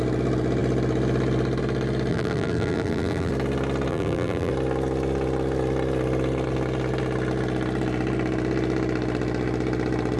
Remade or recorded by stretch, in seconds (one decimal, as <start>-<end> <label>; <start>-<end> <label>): 0.0-2.1 recorded; 2.1-3.3 remade; 3.3-3.9 recorded; 3.9-4.5 remade; 4.5-10.2 recorded